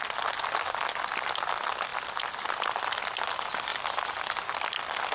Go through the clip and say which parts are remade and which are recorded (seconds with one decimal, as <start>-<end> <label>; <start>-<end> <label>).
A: 0.0-5.1 recorded